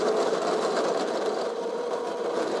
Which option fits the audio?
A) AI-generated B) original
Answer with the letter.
A